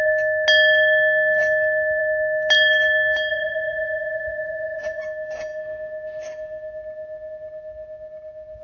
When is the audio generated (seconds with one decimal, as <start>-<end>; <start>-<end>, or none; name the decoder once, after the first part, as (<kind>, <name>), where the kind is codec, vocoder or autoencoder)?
3.3-5.0 (vocoder, Vocos)